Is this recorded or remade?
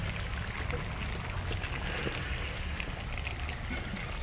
recorded